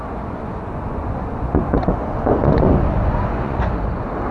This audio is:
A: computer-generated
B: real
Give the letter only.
A